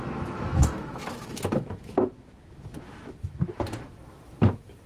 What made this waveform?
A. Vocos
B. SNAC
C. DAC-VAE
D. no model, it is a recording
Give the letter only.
C